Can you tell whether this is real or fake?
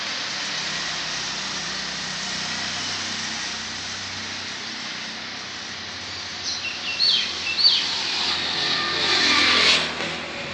real